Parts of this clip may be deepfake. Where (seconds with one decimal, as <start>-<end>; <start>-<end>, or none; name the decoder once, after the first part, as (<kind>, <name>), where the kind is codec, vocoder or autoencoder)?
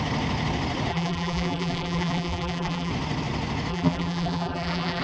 0.9-2.9 (vocoder, BigVGAN v2); 3.7-5.0